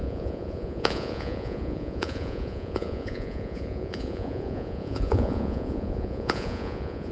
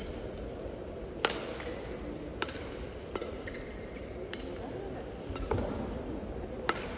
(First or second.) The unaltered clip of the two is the second